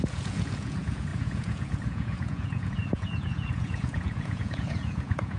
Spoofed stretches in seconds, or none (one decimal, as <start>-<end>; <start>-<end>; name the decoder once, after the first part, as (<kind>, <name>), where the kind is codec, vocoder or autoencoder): 0.0-5.4 (vocoder, Vocos)